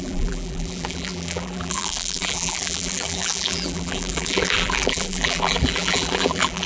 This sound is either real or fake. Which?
fake